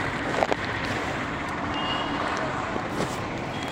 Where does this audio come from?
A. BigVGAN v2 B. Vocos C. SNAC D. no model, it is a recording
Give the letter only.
A